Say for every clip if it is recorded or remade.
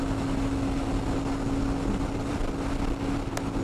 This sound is recorded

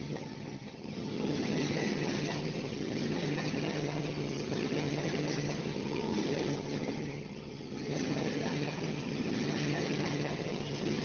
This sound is remade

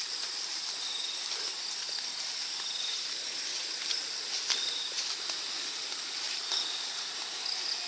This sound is recorded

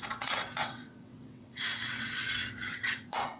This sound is remade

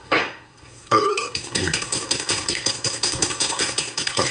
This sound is remade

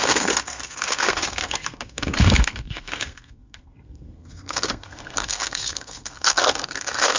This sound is remade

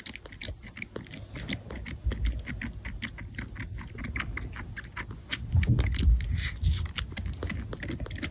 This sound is recorded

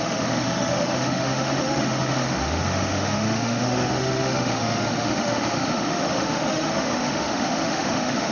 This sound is remade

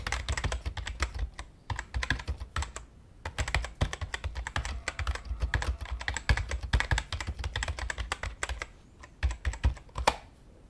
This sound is recorded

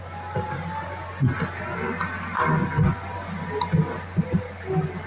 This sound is recorded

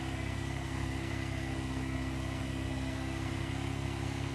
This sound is remade